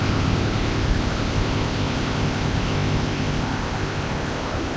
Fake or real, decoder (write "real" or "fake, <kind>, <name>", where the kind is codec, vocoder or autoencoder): fake, codec, ZipCodec